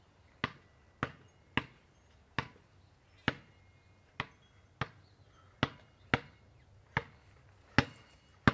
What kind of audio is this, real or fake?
real